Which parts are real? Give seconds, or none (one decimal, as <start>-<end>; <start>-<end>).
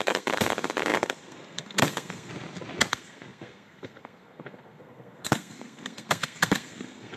2.3-2.9